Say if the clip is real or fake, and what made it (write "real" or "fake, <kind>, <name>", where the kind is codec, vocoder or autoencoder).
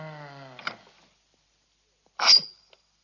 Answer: real